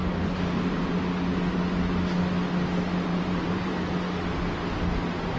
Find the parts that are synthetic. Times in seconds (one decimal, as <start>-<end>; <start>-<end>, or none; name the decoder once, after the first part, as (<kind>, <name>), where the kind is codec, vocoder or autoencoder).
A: 0.0-1.0 (vocoder, BigVGAN v2); 3.1-3.7